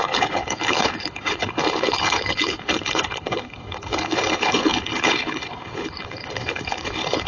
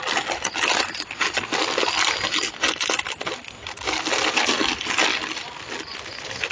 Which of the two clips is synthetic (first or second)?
first